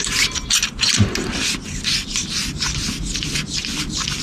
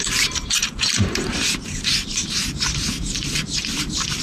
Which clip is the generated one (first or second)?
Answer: second